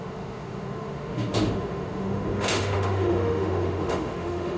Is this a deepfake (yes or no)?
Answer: yes